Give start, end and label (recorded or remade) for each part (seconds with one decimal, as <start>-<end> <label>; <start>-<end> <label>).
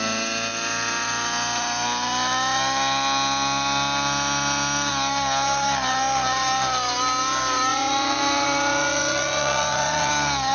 0.0-7.7 recorded; 7.7-10.1 remade; 10.1-10.5 recorded